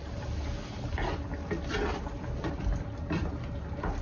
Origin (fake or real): real